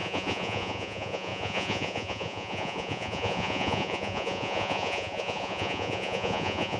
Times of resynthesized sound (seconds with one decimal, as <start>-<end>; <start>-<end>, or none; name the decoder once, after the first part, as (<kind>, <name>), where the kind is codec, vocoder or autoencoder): 0.0-6.8 (vocoder, Vocos)